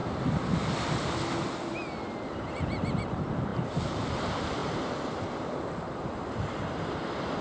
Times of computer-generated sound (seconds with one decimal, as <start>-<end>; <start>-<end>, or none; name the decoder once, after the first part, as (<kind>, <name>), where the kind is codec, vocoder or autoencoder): 2.5-7.4 (vocoder, BigVGAN v2)